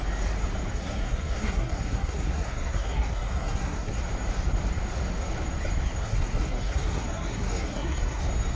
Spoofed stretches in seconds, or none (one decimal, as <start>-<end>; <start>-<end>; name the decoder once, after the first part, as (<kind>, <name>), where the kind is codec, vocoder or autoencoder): 0.7-4.0 (codec, SNAC); 6.0-8.2